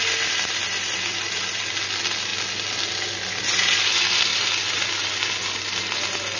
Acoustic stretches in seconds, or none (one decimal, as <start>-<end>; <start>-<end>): 0.0-6.4